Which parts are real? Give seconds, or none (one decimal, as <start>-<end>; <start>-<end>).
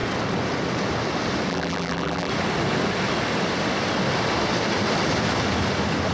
0.0-1.5; 2.3-6.1